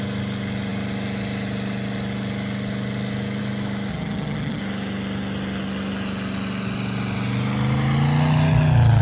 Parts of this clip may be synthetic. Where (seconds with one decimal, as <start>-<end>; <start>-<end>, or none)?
3.9-4.6